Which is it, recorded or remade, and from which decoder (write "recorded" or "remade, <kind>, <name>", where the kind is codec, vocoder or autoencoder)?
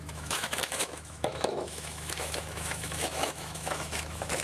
remade, autoencoder, DAC-VAE